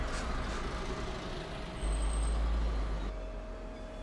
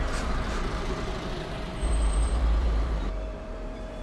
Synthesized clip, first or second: second